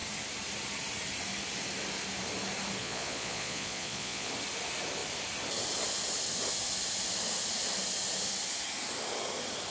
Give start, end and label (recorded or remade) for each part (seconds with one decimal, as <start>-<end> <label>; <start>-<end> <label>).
0.0-2.8 recorded; 2.8-4.3 remade; 4.3-9.7 recorded